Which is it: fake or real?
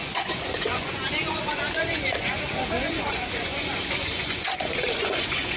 fake